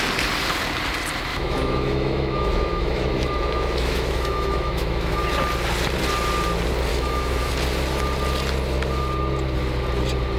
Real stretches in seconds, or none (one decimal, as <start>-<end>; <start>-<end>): 0.0-1.3; 5.2-6.9; 7.5-10.4